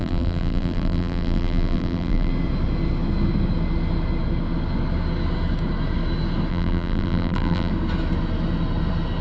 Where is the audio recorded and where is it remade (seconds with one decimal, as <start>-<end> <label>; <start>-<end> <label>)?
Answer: 0.0-2.3 remade; 2.3-6.5 recorded; 6.5-7.7 remade; 7.7-9.2 recorded